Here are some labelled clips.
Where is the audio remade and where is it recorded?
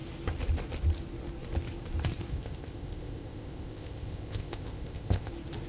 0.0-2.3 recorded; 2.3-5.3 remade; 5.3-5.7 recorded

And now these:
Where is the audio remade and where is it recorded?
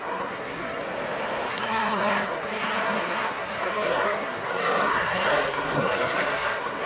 0.0-0.8 remade; 0.8-1.5 recorded; 1.5-6.9 remade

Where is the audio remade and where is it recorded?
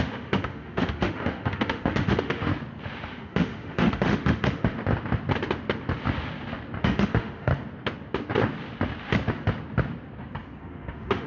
0.0-2.5 remade; 2.5-3.1 recorded; 3.1-4.8 remade; 4.8-6.8 recorded; 6.8-7.5 remade; 7.5-10.6 recorded; 10.6-11.3 remade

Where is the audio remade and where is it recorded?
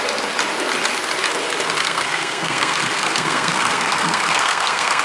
0.0-1.8 recorded; 1.8-5.0 remade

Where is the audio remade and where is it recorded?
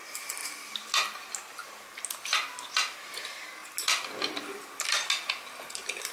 0.0-6.1 recorded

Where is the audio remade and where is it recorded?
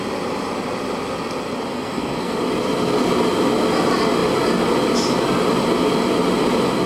0.0-1.7 recorded; 1.7-2.4 remade; 2.4-6.9 recorded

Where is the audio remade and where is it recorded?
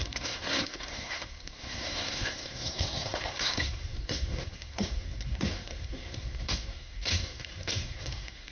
0.0-8.5 remade